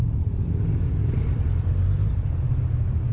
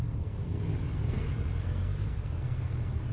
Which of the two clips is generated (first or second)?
second